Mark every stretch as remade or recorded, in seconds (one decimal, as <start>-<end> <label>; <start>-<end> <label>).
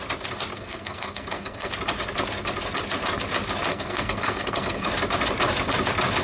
0.0-0.5 recorded; 0.5-1.7 remade; 1.7-3.7 recorded; 3.7-4.9 remade; 4.9-6.2 recorded